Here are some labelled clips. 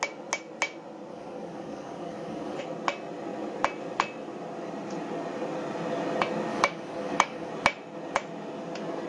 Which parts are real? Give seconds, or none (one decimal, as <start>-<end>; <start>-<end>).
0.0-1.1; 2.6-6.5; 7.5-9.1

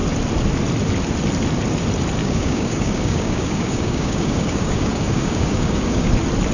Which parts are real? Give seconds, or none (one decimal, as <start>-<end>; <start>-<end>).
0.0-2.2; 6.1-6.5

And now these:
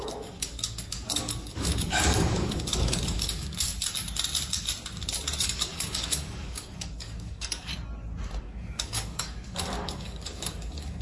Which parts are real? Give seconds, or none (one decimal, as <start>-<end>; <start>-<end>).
3.7-5.4; 7.7-8.4

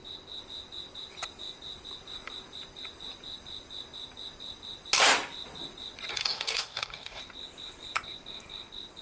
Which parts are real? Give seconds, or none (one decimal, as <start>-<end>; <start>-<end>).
0.0-6.1; 7.2-9.0